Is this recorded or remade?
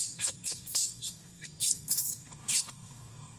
remade